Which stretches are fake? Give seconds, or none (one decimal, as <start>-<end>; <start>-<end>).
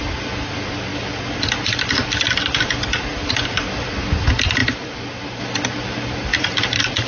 4.6-5.4; 6.3-7.1